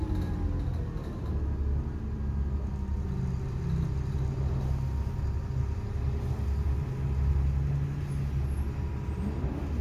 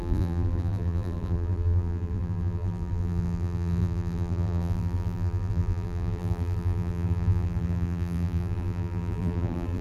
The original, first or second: first